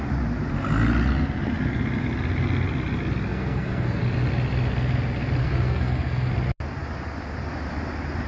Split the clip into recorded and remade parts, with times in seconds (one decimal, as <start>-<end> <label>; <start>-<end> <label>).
0.0-3.3 recorded; 3.3-4.0 remade; 4.0-5.4 recorded; 5.4-6.3 remade; 6.3-8.3 recorded

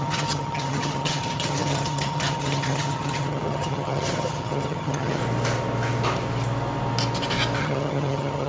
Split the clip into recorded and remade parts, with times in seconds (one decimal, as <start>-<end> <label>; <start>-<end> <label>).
0.0-5.2 remade; 5.2-7.6 recorded; 7.6-8.5 remade

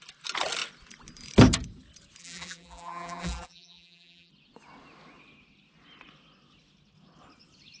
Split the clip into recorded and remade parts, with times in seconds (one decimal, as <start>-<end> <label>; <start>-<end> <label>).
0.0-2.2 recorded; 2.2-4.3 remade; 4.3-7.8 recorded